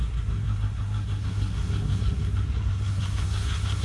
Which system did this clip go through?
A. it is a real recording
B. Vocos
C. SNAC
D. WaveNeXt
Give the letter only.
C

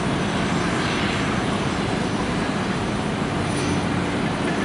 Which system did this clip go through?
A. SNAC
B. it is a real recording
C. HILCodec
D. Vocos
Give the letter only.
B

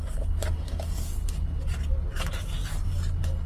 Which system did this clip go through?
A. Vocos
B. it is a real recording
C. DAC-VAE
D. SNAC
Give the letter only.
B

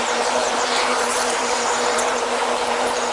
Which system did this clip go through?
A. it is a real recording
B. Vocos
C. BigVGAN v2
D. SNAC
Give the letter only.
C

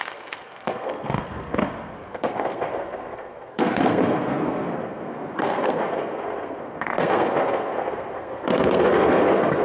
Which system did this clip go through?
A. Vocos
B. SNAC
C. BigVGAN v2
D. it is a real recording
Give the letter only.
B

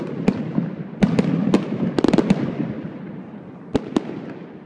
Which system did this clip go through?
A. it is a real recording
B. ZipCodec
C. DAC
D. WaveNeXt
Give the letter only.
A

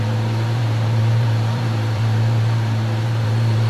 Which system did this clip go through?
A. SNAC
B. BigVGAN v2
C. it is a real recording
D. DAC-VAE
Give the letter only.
B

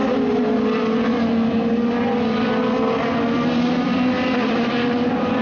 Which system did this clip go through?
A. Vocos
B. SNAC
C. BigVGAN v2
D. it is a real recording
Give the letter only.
D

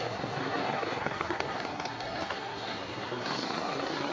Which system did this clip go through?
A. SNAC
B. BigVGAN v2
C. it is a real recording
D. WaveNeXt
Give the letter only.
A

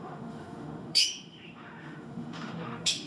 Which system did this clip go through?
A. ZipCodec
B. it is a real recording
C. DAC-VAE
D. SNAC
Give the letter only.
C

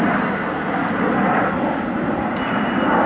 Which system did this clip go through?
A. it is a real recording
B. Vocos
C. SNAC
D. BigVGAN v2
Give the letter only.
A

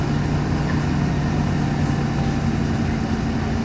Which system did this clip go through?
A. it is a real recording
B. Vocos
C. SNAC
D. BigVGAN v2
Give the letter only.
A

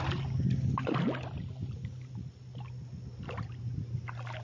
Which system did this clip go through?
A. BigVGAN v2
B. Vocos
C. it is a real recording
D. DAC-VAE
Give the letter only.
C